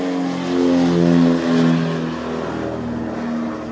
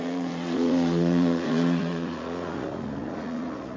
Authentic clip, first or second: first